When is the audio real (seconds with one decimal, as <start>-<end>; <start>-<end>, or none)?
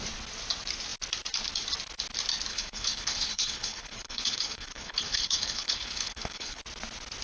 0.0-2.5; 6.6-7.2